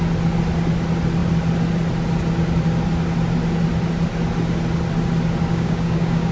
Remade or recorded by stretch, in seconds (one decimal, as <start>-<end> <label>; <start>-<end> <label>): 0.0-5.5 recorded; 5.5-6.3 remade